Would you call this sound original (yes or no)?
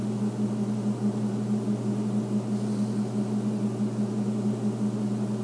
yes